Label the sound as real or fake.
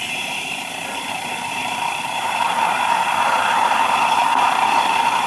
fake